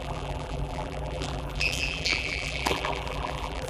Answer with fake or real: fake